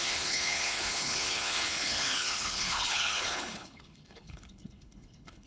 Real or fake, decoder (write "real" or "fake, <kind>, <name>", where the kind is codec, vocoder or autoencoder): fake, codec, HILCodec